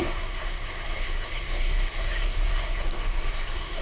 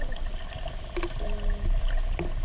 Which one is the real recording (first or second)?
second